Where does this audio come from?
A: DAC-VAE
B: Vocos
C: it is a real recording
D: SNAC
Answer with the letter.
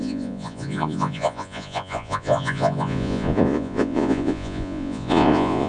B